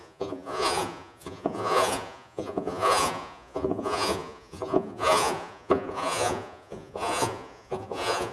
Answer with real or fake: fake